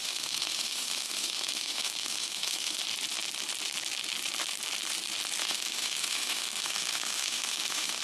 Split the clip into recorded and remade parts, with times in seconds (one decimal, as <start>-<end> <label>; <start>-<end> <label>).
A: 0.0-2.8 remade; 2.8-5.4 recorded; 5.4-8.0 remade